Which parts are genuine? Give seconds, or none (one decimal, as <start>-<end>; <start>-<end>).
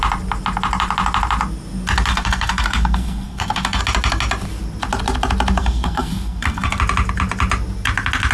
0.0-2.1; 3.8-5.6; 6.8-8.3